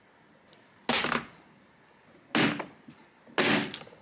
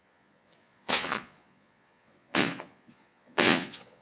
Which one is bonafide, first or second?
first